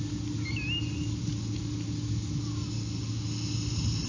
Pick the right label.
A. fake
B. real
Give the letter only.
B